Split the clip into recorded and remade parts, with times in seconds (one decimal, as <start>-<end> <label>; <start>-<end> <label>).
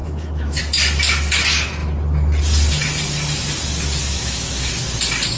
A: 0.0-0.6 remade; 0.6-4.0 recorded; 4.0-4.7 remade; 4.7-5.4 recorded